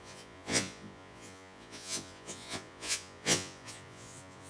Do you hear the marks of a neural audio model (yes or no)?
yes